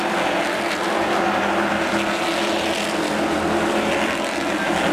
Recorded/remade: recorded